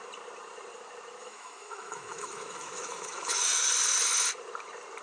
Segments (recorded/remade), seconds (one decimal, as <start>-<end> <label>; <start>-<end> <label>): 0.0-1.2 recorded; 1.2-3.6 remade; 3.6-5.0 recorded